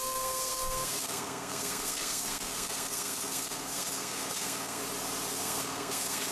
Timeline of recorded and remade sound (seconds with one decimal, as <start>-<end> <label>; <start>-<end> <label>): 0.0-4.8 remade; 4.8-5.3 recorded; 5.3-6.3 remade